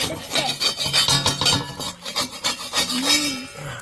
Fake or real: real